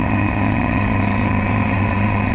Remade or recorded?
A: remade